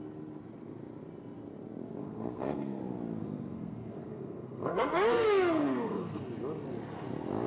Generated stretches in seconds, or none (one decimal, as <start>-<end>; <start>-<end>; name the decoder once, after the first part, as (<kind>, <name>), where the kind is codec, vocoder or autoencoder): 2.0-2.8 (codec, SNAC); 3.2-6.2